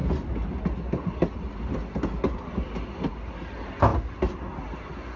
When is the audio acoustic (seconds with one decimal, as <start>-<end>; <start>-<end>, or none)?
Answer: 0.0-5.2